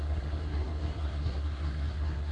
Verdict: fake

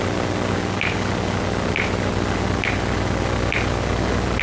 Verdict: real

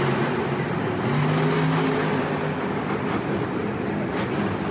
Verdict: real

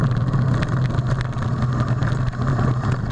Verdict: real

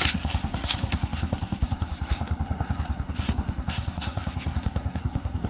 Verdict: fake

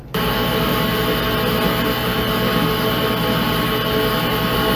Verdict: real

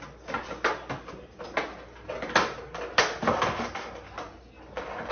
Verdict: real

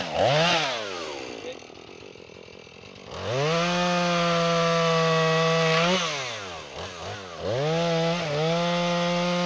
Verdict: real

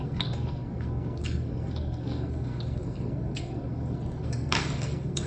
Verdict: fake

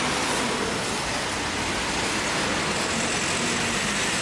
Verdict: real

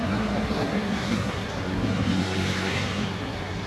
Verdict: fake